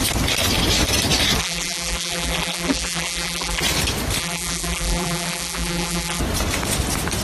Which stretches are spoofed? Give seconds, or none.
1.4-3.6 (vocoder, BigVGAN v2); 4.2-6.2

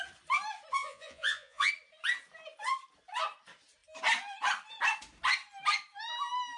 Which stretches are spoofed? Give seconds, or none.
0.8-1.7 (vocoder, Vocos)

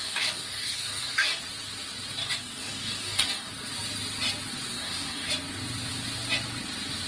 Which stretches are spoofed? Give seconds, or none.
0.0-1.4 (codec, DAC); 2.2-3.5; 4.7-5.3